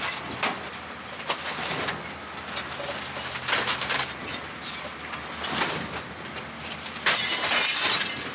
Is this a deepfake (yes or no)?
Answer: no